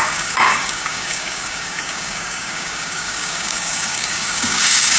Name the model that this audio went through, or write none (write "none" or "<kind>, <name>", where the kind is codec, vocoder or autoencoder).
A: codec, DAC